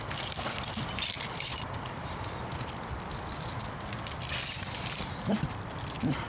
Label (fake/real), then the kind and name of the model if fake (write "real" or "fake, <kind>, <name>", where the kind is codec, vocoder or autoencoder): fake, vocoder, BigVGAN v2